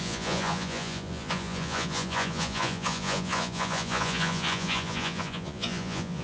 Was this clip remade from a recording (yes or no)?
yes